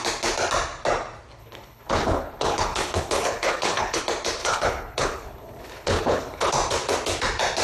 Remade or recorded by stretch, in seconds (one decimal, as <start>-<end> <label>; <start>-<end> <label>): 0.0-1.4 recorded; 1.4-4.0 remade; 4.0-4.4 recorded; 4.4-6.5 remade; 6.5-7.6 recorded